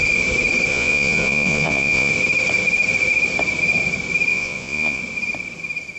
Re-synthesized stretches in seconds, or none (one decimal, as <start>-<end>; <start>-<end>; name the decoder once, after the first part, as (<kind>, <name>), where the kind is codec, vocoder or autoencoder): 0.7-2.1 (vocoder, Vocos); 4.3-5.0